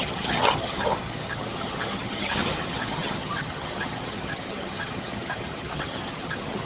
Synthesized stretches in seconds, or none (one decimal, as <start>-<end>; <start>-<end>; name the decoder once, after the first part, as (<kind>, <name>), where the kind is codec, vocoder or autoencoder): 0.0-6.7 (vocoder, HiFi-GAN)